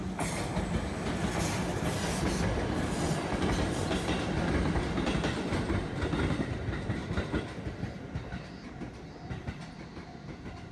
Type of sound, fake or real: real